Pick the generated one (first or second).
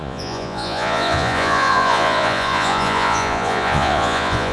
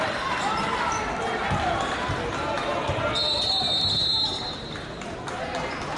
first